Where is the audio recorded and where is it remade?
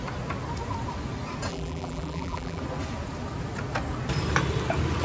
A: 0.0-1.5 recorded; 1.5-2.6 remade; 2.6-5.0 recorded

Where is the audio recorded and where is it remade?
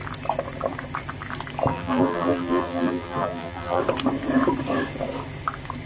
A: 0.0-1.7 recorded; 1.7-3.8 remade; 3.8-5.9 recorded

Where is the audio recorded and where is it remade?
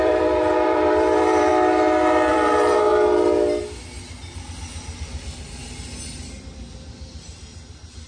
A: 0.0-1.5 remade; 1.5-2.3 recorded; 2.3-2.9 remade; 2.9-8.1 recorded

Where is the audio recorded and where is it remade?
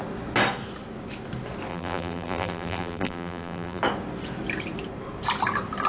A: 0.0-1.7 recorded; 1.7-3.8 remade; 3.8-5.9 recorded